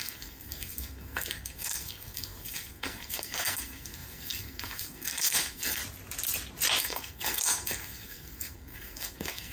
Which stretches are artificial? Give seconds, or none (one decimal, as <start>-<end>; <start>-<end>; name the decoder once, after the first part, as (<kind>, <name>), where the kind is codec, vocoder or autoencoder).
0.0-5.8 (codec, SNAC); 6.8-9.5